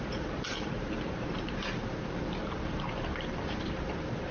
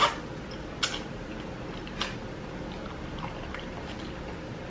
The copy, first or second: first